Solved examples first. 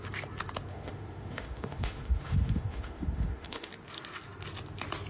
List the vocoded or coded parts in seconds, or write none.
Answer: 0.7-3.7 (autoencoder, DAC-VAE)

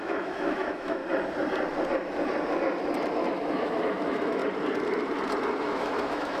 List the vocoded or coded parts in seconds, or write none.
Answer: 0.0-1.0 (autoencoder, DAC-VAE); 3.3-4.4; 5.6-6.4

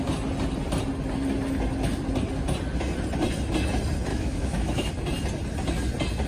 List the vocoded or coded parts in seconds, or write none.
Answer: 4.1-4.9 (autoencoder, DAC-VAE)

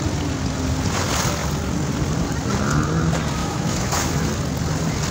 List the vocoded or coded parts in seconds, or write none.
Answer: 3.4-4.3 (autoencoder, DAC-VAE)

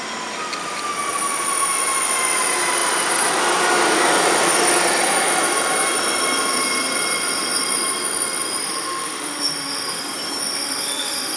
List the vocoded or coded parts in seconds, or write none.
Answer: 8.6-10.0 (autoencoder, DAC-VAE); 10.4-11.4